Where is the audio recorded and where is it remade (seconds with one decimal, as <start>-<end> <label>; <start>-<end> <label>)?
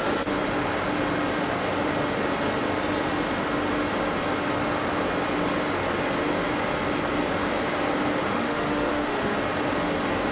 0.0-8.3 recorded; 8.3-9.4 remade; 9.4-10.3 recorded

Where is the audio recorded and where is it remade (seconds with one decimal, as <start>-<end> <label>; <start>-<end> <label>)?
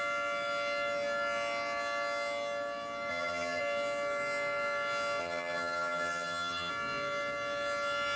0.0-3.1 recorded; 3.1-3.6 remade; 3.6-5.2 recorded; 5.2-6.7 remade; 6.7-8.2 recorded